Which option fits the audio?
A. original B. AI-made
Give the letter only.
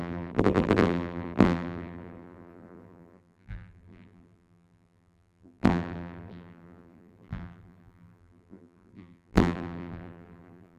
B